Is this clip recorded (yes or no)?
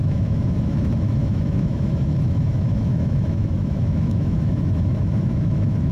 no